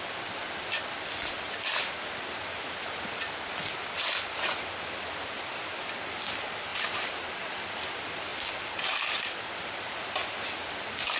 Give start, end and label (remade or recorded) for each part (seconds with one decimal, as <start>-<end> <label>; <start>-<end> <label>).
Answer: 0.0-6.7 recorded; 6.7-7.6 remade; 7.6-11.2 recorded